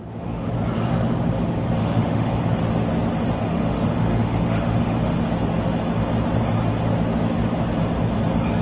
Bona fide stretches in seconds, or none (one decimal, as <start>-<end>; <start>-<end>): 0.5-1.8; 2.4-3.5; 5.2-8.6